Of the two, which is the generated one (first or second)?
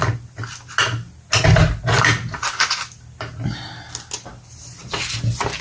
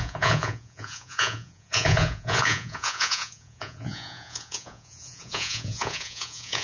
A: second